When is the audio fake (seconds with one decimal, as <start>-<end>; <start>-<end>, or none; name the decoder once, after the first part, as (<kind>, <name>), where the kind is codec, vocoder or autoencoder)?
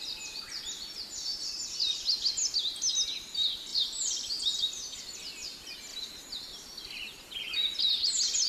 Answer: 3.7-5.0 (vocoder, BigVGAN v2); 5.9-7.9